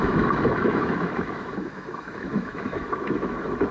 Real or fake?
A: fake